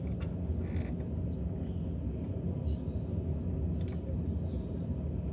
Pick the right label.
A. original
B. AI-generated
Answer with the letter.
A